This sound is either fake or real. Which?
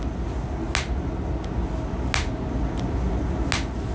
real